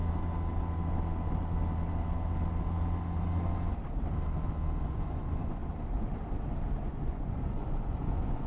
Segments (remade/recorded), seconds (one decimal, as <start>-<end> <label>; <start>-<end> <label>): 0.0-4.8 recorded; 4.8-5.6 remade; 5.6-6.8 recorded; 6.8-8.5 remade